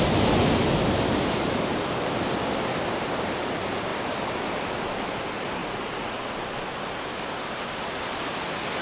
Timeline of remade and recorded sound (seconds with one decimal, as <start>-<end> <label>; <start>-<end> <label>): 0.0-5.6 recorded; 5.6-6.2 remade; 6.2-8.8 recorded